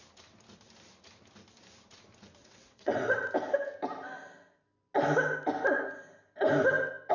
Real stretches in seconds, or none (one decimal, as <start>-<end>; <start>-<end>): 0.0-2.4; 3.3-7.1